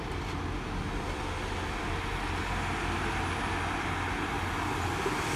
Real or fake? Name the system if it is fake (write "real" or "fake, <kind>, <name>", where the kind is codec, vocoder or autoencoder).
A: real